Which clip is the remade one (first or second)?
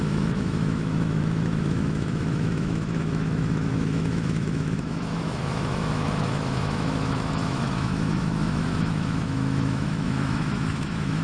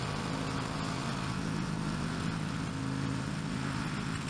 first